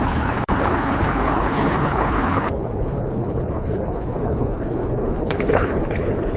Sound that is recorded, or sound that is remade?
remade